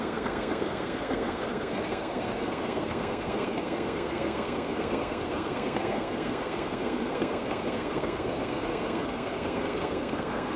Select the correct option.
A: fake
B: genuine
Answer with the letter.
A